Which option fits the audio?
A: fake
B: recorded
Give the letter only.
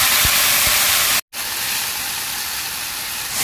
B